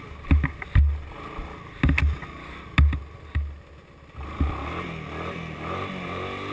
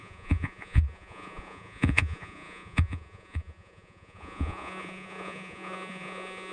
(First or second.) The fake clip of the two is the second